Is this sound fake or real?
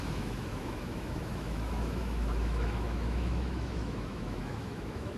fake